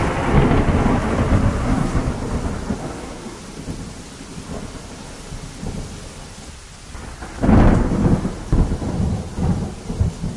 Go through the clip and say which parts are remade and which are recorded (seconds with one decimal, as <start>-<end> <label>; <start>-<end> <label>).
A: 0.0-1.6 recorded; 1.6-2.1 remade; 2.1-2.8 recorded; 2.8-3.4 remade; 3.4-10.4 recorded